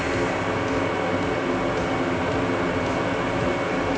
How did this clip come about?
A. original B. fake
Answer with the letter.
A